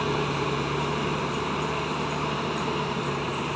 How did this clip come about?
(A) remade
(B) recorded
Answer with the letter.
A